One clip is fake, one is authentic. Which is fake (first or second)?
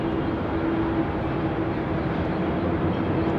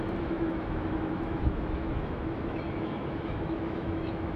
second